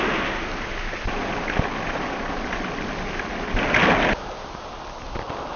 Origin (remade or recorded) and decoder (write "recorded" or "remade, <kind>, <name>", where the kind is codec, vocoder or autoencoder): recorded